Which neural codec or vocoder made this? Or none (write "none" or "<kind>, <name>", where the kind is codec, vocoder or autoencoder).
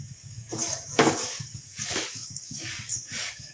codec, DAC